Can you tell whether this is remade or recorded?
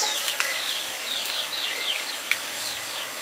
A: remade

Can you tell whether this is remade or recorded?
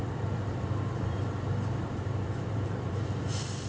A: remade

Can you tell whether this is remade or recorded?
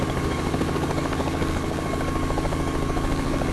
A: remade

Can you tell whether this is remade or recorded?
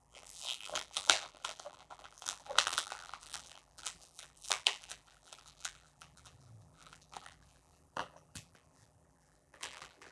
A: remade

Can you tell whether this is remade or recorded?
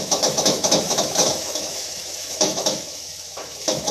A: remade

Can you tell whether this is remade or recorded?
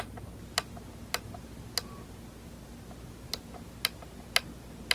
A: recorded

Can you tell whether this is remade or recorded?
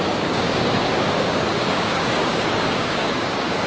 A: remade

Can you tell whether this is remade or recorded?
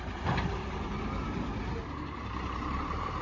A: remade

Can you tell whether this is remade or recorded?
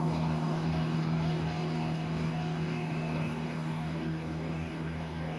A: remade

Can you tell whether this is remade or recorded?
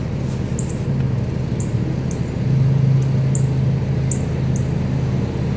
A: recorded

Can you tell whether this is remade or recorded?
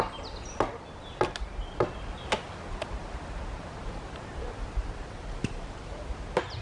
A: recorded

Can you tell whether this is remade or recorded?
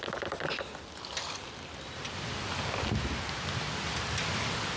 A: recorded